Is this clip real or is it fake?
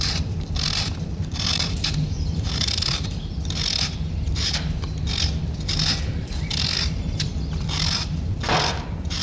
fake